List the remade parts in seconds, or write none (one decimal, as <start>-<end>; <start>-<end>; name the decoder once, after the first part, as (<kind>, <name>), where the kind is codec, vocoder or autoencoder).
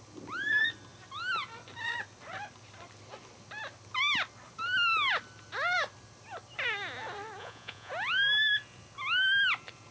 7.4-7.9 (vocoder, Vocos)